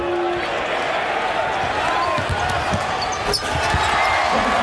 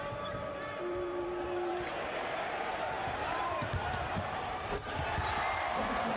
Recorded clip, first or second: first